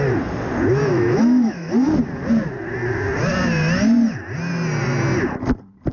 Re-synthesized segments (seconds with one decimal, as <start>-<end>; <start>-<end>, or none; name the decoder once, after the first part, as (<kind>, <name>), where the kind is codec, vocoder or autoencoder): 0.9-1.7 (autoencoder, DAC-VAE)